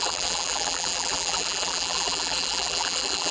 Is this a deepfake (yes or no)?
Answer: yes